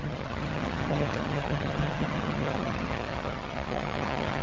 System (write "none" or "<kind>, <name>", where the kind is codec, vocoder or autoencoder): vocoder, HiFi-GAN